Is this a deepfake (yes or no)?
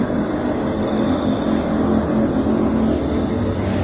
no